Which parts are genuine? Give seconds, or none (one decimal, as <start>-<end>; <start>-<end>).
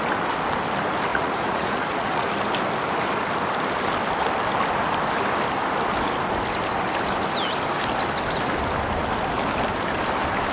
0.0-1.1; 2.3-10.5